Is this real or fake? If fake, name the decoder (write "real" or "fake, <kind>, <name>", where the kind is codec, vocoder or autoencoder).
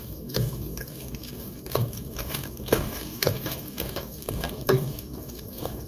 fake, codec, DAC